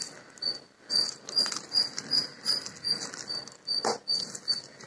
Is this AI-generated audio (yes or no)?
no